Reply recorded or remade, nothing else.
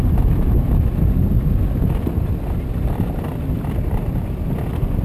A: recorded